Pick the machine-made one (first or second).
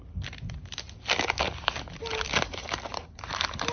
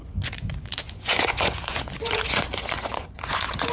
second